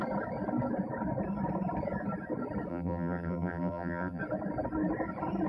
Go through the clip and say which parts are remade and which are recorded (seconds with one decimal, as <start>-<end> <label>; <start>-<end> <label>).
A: 0.0-2.7 recorded; 2.7-4.2 remade; 4.2-5.5 recorded